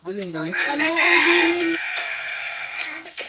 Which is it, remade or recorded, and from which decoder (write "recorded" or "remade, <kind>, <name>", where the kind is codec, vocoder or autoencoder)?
remade, codec, SNAC